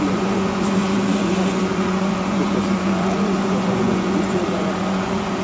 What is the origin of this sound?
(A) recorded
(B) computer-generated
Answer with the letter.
B